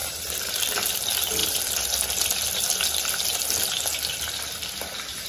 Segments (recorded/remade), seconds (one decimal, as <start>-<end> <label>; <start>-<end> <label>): 0.0-0.6 remade; 0.6-5.3 recorded